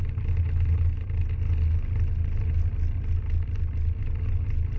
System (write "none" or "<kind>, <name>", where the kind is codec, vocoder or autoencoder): none